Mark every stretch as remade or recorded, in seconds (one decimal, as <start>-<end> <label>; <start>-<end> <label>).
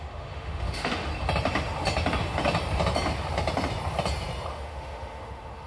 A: 0.0-1.1 remade; 1.1-4.5 recorded; 4.5-5.7 remade